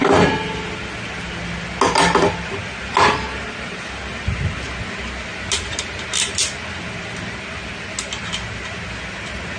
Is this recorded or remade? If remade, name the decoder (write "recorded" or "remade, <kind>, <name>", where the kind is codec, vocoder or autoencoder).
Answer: recorded